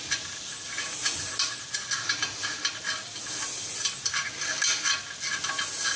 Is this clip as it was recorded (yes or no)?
yes